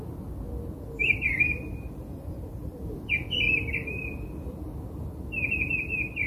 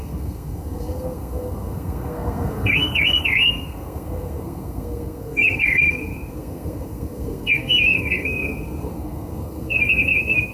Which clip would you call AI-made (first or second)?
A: second